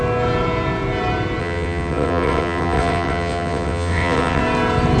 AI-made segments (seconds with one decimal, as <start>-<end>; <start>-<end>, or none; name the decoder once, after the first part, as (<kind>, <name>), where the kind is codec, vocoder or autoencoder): 1.4-4.4 (vocoder, WaveNeXt)